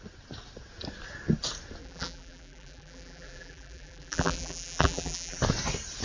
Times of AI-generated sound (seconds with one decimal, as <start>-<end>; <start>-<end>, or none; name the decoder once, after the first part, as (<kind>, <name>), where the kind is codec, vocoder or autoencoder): 1.8-5.4 (vocoder, BigVGAN v2)